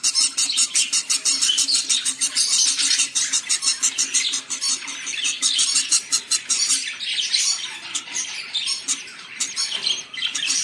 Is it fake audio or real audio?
fake